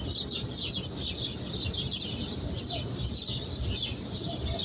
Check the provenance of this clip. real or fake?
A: real